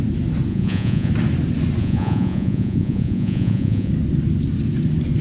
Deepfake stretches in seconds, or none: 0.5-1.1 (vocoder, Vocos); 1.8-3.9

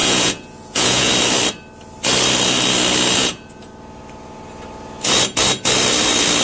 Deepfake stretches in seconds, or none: 0.0-1.1 (vocoder, Vocos); 3.2-3.7